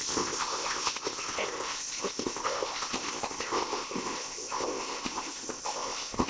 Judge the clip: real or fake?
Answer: fake